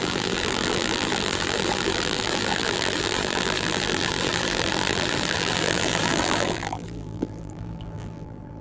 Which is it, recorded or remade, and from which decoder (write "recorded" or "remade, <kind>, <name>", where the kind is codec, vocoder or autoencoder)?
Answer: remade, vocoder, BigVGAN v2